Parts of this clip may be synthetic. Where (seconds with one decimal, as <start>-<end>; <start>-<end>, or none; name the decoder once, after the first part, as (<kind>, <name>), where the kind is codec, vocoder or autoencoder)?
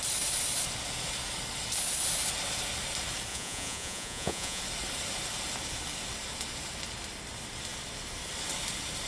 3.3-4.6 (vocoder, Vocos)